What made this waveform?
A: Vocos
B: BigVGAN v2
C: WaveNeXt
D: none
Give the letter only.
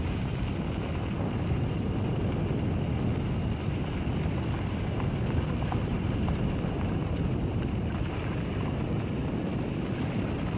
D